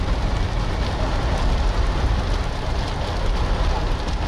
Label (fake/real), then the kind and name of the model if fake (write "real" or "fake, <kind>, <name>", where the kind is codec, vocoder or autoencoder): real